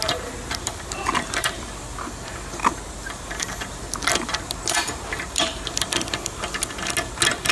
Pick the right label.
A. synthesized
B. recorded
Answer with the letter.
B